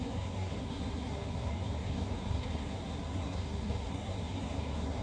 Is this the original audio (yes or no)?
no